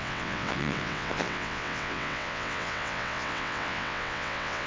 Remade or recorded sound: remade